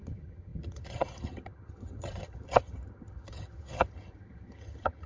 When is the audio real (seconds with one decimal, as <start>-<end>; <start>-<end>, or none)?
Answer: none